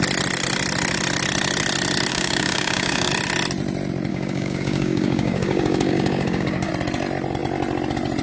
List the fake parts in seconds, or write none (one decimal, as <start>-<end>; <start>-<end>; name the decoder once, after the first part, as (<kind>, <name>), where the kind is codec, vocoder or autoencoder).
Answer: 2.1-3.1 (codec, DAC); 4.1-6.7